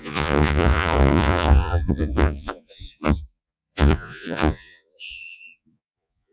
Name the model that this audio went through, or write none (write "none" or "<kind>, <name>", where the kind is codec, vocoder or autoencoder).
vocoder, Vocos